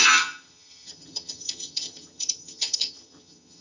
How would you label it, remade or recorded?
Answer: remade